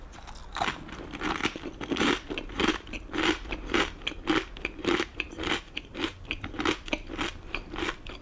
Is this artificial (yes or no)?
yes